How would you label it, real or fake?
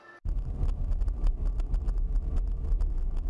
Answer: real